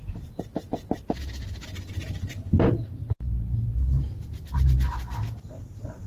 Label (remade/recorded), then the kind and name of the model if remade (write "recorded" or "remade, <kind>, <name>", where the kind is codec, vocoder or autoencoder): recorded